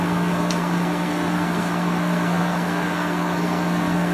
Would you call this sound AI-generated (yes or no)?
yes